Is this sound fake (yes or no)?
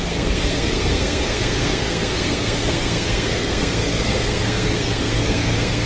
yes